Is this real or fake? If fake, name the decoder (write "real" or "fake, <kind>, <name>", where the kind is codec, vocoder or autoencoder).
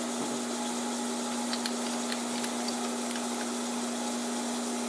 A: real